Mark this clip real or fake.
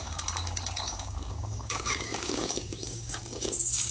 fake